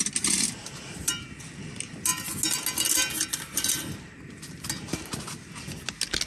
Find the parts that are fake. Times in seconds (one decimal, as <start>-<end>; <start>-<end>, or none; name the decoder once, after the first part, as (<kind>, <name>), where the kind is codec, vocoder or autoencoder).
none